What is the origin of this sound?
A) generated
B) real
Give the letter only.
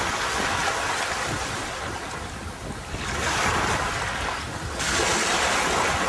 B